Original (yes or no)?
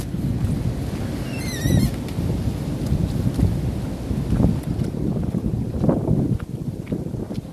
yes